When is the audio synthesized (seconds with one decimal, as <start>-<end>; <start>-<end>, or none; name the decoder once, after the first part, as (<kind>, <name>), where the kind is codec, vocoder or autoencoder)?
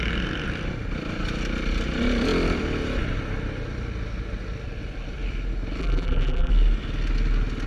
5.8-6.5 (vocoder, BigVGAN v2)